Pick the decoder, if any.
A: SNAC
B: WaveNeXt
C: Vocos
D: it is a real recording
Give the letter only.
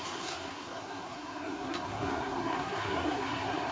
A